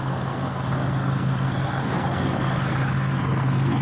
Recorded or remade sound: remade